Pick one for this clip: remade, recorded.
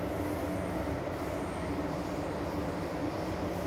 recorded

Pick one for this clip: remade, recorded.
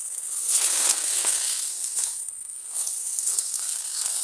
remade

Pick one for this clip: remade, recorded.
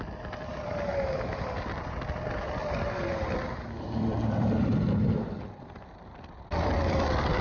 remade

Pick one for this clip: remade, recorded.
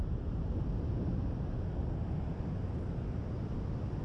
recorded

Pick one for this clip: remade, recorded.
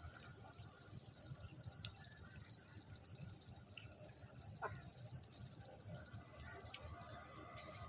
remade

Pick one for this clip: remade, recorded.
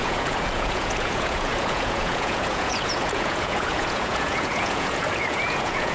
remade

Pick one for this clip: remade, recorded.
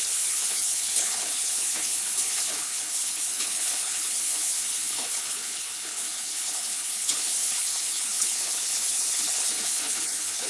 remade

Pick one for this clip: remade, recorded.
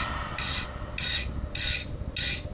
recorded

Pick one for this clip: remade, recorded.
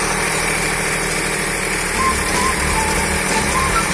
remade